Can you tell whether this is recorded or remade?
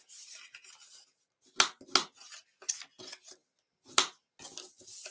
recorded